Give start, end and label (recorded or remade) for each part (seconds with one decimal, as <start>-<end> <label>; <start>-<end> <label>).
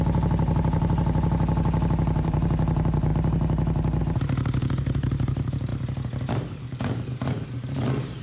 0.0-5.7 remade; 5.7-6.3 recorded; 6.3-8.2 remade